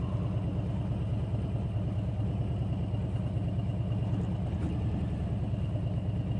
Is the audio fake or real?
real